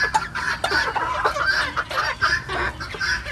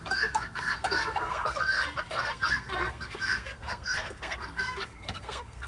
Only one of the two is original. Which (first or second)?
first